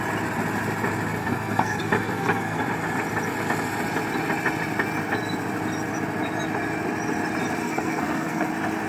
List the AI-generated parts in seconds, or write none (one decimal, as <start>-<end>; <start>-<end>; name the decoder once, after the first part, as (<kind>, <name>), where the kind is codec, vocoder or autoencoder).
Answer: 1.2-2.6 (codec, SNAC); 7.6-8.5